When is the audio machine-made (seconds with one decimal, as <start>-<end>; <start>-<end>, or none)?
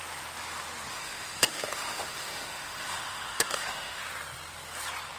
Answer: 0.9-4.0